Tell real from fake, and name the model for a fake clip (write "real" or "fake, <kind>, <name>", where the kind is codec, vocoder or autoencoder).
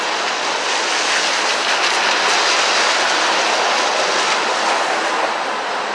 real